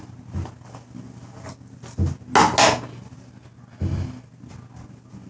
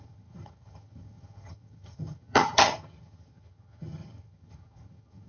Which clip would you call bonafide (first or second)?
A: first